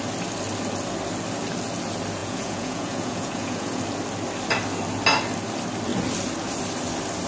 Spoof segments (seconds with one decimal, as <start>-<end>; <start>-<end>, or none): 2.2-3.8

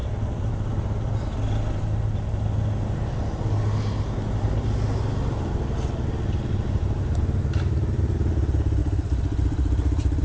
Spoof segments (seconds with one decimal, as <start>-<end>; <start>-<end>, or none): none

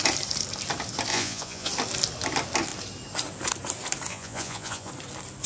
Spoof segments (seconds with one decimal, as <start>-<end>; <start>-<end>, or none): 1.1-1.7; 4.1-4.9

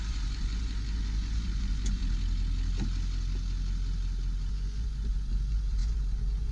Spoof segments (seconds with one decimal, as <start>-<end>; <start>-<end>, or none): 0.0-2.0; 4.5-6.5

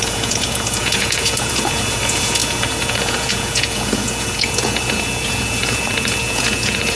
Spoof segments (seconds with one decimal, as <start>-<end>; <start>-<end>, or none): 0.0-7.0